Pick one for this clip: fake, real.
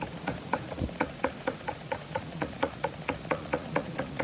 fake